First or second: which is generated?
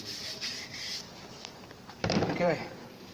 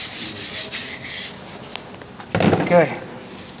first